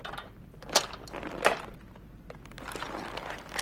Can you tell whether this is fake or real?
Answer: real